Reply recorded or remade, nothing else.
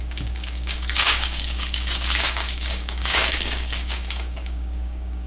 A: remade